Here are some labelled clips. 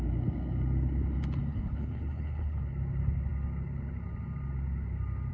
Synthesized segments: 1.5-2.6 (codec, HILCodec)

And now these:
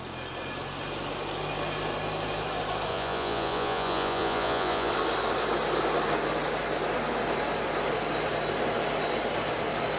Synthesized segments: 2.9-4.9 (vocoder, Vocos)